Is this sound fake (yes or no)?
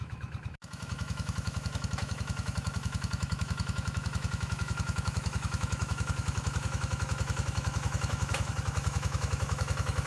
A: yes